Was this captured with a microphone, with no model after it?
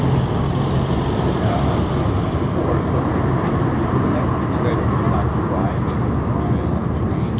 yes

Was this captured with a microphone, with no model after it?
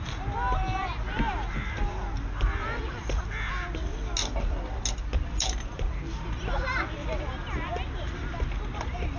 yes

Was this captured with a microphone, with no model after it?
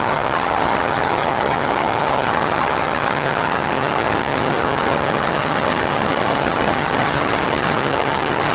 no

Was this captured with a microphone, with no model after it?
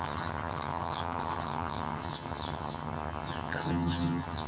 no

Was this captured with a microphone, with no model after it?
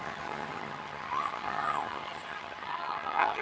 no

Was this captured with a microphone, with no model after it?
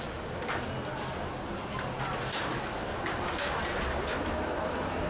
yes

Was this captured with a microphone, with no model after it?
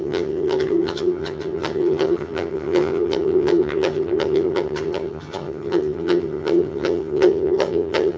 no